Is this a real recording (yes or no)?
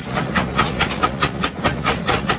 no